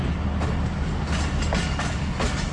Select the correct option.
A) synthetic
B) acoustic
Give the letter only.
B